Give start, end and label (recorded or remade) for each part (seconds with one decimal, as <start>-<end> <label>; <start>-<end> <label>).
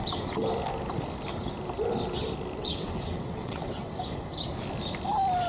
0.0-2.6 recorded; 2.6-3.9 remade; 3.9-5.5 recorded